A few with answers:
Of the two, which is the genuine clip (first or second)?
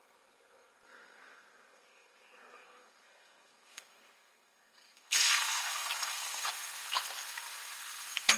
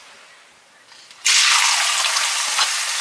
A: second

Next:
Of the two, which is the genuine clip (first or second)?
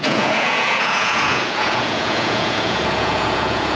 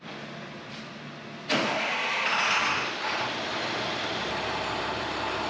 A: second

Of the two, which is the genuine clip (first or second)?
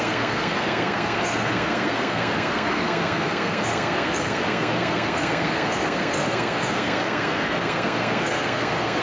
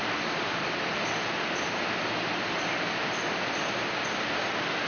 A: second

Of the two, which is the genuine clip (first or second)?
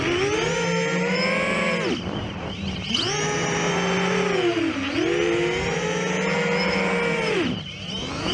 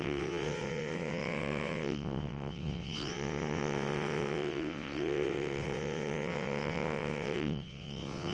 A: first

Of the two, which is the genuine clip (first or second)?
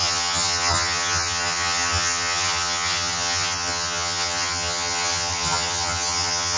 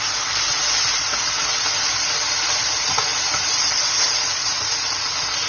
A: second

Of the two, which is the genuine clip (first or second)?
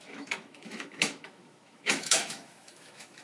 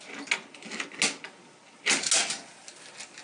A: second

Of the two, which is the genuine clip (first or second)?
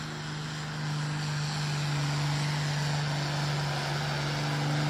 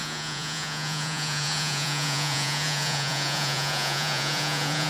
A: first